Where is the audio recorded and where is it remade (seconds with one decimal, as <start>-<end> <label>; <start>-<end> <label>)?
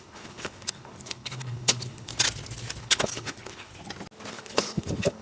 0.0-2.1 remade; 2.1-2.8 recorded; 2.8-3.7 remade; 3.7-4.3 recorded; 4.3-5.2 remade